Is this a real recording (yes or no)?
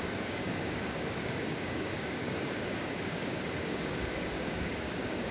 no